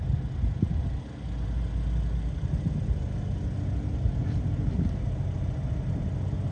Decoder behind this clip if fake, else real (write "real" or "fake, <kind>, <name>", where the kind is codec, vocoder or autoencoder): real